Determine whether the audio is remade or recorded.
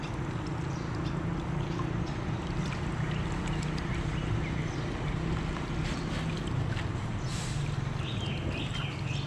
recorded